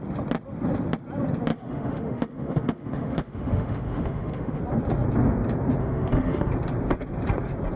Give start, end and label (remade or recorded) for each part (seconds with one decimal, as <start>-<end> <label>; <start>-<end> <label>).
0.0-1.5 recorded; 1.5-4.6 remade; 4.6-5.8 recorded; 5.8-6.5 remade; 6.5-7.8 recorded